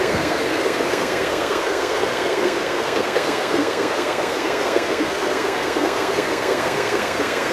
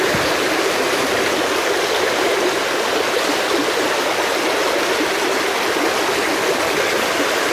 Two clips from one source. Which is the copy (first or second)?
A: first